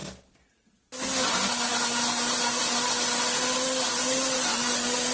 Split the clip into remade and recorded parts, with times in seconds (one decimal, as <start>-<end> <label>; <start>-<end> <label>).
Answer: 0.0-5.1 recorded